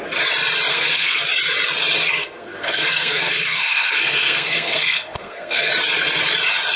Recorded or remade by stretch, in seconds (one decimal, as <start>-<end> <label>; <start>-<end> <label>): 0.0-0.7 recorded; 0.7-1.2 remade; 1.2-2.2 recorded; 2.2-5.7 remade; 5.7-6.8 recorded